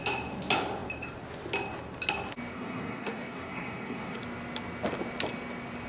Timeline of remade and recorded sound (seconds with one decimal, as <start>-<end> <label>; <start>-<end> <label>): 0.0-2.5 recorded; 2.5-4.2 remade; 4.2-5.9 recorded